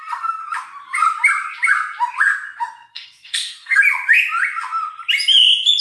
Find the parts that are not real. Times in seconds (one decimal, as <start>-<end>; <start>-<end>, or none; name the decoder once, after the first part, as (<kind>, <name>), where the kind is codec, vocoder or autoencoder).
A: 0.0-0.4 (codec, SNAC); 2.9-3.8